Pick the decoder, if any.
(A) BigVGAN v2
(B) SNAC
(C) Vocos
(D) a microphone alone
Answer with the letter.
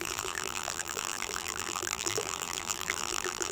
A